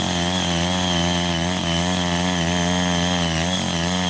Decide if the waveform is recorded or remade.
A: recorded